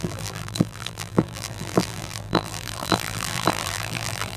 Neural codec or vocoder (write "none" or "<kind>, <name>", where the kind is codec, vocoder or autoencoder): vocoder, BigVGAN v2